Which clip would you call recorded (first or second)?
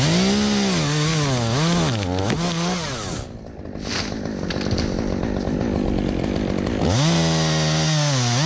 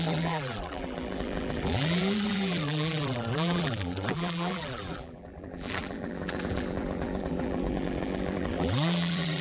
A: first